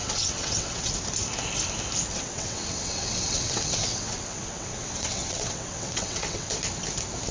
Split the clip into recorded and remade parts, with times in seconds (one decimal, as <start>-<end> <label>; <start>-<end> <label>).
0.0-0.9 remade; 0.9-2.1 recorded; 2.1-6.5 remade; 6.5-7.3 recorded